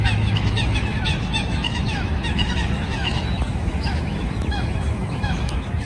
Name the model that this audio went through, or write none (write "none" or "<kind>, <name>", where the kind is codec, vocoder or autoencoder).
autoencoder, DAC-VAE